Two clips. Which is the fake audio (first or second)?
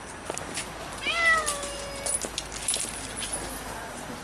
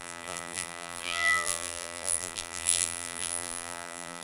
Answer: second